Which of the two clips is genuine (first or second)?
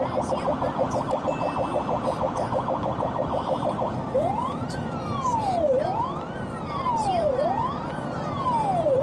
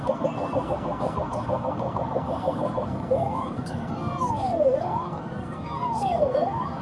first